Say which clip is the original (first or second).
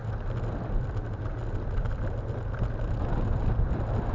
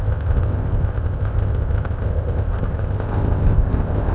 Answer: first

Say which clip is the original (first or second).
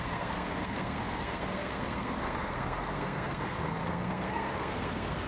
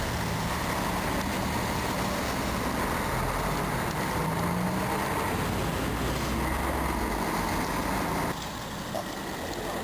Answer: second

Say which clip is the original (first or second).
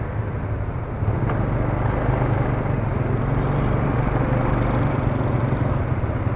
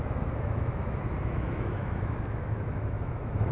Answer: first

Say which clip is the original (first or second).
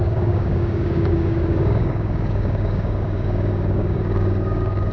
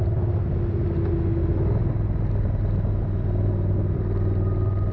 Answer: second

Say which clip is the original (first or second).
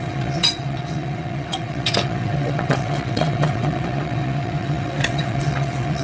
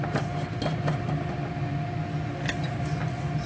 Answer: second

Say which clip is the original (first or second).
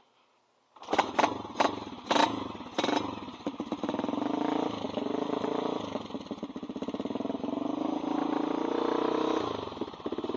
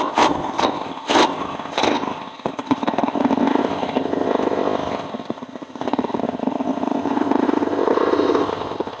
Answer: first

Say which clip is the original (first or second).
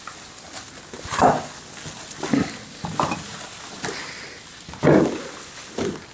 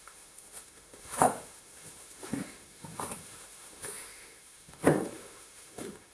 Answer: first